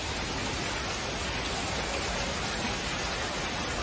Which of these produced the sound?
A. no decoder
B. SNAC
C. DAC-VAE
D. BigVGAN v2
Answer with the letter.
A